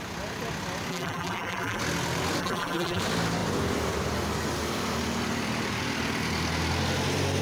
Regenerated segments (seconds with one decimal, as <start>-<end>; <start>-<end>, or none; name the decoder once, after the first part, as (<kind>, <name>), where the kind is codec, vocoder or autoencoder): 0.9-1.8 (vocoder, BigVGAN v2); 2.4-3.0